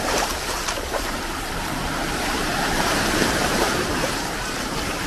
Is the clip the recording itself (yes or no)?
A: no